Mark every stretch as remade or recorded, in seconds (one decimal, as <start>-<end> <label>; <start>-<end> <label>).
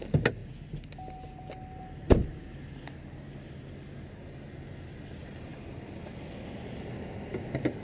0.0-7.8 recorded